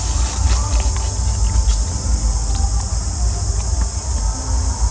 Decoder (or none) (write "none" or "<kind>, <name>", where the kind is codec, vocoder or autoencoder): none